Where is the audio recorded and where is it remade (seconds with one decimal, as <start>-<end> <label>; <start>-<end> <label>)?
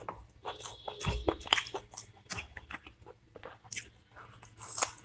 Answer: 0.0-5.0 recorded